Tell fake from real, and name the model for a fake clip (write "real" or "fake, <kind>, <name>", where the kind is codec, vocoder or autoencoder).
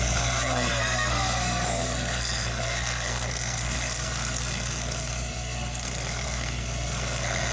fake, codec, SNAC